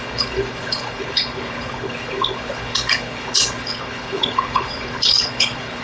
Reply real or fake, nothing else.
fake